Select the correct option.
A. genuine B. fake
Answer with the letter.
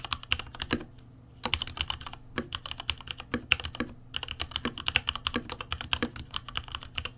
A